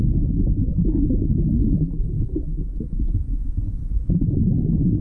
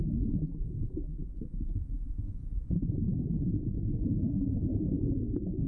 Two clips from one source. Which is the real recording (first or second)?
first